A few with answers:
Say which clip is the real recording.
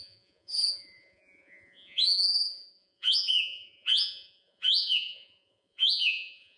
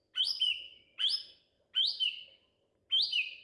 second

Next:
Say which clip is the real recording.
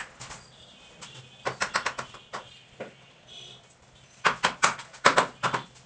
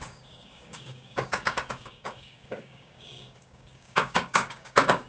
first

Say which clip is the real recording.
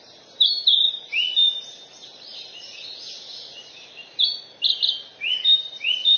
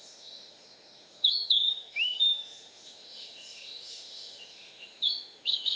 first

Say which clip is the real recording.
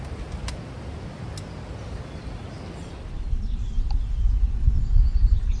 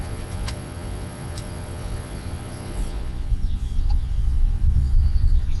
first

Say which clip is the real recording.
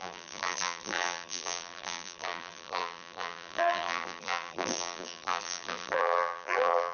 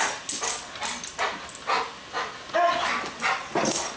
second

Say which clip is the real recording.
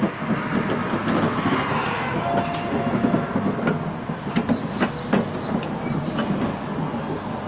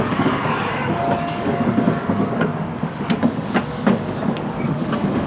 first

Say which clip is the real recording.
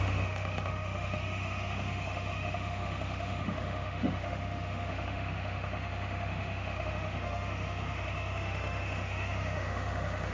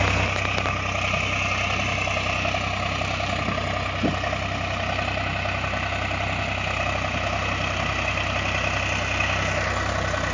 second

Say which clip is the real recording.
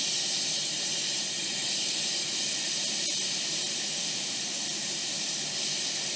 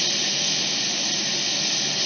second